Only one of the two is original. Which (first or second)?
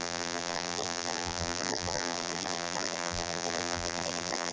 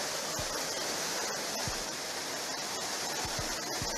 second